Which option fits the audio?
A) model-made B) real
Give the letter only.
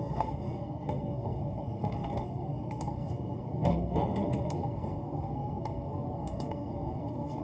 A